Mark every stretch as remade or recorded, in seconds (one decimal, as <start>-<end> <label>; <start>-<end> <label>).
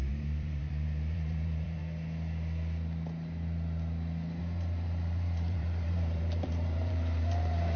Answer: 0.0-1.8 remade; 1.8-4.4 recorded; 4.4-7.8 remade